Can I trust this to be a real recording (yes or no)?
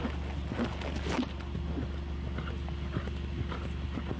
yes